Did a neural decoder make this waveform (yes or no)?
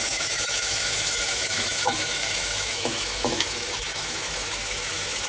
yes